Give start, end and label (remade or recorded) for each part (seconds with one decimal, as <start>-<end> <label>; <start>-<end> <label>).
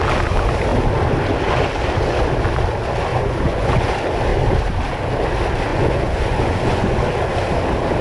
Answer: 0.0-3.1 recorded; 3.1-3.9 remade; 3.9-5.7 recorded; 5.7-7.0 remade; 7.0-8.0 recorded